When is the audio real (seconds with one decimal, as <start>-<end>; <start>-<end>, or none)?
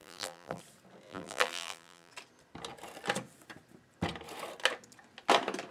0.6-1.1; 2.1-5.7